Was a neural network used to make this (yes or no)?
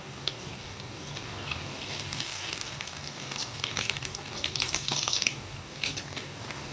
yes